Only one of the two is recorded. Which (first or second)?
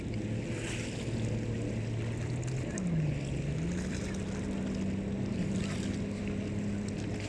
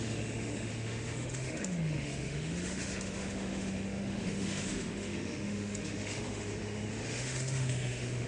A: first